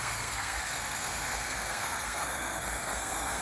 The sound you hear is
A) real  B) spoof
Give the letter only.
B